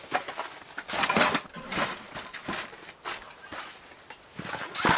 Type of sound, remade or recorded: recorded